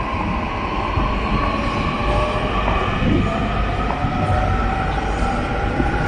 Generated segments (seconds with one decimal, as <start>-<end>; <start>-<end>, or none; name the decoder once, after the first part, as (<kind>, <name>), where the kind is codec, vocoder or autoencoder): none